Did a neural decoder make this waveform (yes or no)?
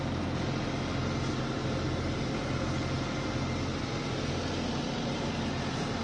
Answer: no